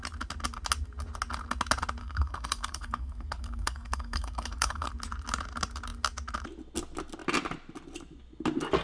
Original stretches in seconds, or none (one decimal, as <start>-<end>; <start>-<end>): 0.0-2.0; 4.9-8.8